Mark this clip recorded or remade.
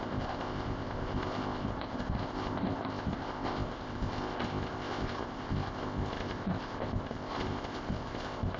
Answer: remade